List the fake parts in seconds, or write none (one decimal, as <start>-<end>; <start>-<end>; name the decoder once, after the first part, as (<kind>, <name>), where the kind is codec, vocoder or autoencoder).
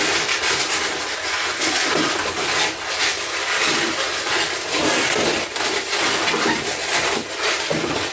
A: none